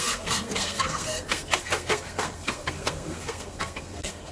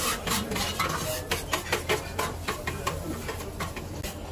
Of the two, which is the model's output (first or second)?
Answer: first